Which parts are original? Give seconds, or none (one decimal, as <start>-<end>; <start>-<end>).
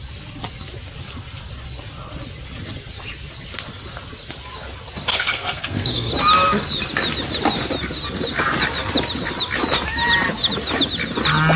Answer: 0.0-5.1; 6.1-11.6